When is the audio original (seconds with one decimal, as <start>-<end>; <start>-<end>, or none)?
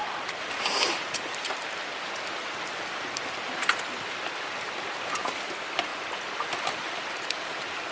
2.1-7.9